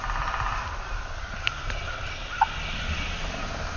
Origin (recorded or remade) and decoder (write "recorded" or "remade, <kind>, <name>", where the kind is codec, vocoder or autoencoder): recorded